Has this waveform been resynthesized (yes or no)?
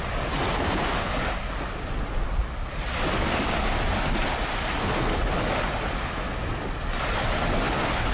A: no